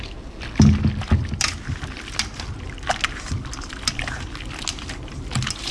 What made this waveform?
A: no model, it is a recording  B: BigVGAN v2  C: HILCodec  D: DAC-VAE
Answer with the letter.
A